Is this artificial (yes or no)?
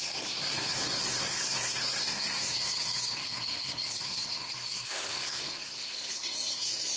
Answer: yes